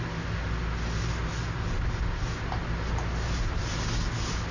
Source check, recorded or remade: recorded